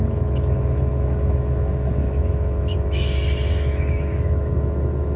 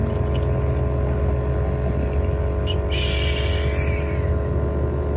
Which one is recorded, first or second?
second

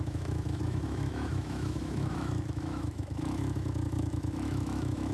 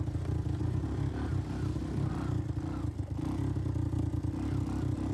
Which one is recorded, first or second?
second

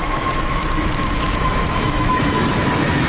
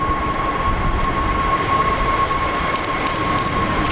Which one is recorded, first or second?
second